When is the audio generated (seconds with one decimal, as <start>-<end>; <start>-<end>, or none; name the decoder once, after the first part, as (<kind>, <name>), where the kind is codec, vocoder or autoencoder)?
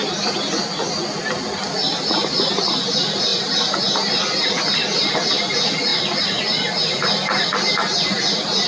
none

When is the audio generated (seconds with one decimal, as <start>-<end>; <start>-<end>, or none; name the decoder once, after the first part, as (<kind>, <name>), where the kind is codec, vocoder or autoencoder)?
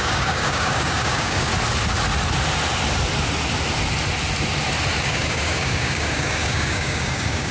0.0-1.5 (codec, DAC); 5.0-7.5